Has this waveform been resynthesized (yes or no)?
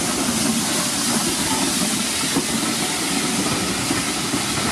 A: no